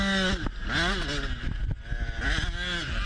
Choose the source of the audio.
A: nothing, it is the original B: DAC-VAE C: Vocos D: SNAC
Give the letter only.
A